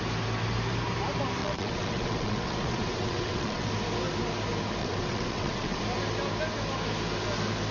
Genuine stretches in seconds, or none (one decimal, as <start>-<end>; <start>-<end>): 0.0-1.4; 3.7-4.8; 5.8-7.7